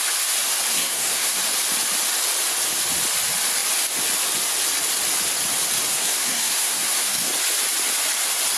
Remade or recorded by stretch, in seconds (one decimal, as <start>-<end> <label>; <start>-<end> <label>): 0.0-0.7 recorded; 0.7-1.4 remade; 1.4-5.9 recorded; 5.9-7.3 remade; 7.3-8.6 recorded